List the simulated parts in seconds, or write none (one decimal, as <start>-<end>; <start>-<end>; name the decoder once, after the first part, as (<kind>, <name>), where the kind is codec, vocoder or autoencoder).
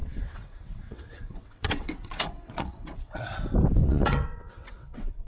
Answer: 0.0-3.2 (vocoder, WaveNeXt); 3.8-5.3